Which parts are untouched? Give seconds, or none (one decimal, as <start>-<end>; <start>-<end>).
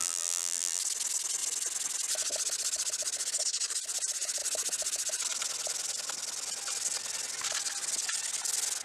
0.8-8.8